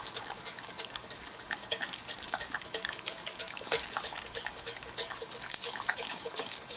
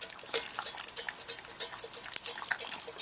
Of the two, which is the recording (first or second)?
second